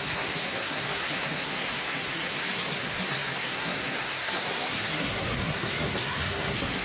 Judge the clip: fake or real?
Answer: fake